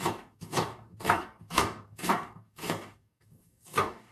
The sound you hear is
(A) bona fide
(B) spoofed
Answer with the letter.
B